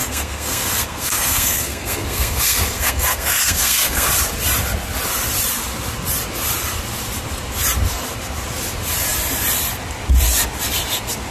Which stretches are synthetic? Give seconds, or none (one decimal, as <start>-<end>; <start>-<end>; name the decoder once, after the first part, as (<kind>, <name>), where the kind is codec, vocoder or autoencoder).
0.0-4.1 (codec, SNAC)